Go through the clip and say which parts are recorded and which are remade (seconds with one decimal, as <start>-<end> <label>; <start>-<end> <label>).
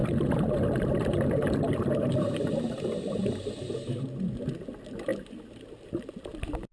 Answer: 0.0-3.7 remade; 3.7-6.7 recorded